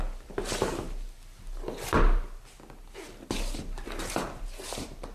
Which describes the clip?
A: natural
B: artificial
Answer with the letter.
A